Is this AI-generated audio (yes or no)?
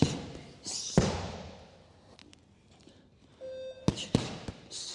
no